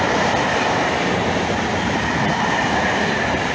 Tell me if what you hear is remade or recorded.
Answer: remade